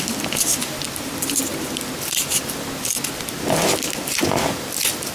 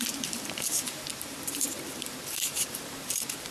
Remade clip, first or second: second